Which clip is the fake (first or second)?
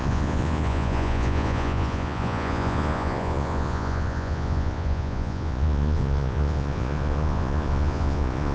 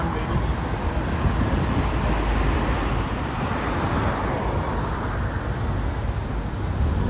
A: first